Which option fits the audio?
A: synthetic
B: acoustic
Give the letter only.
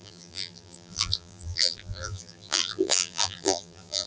A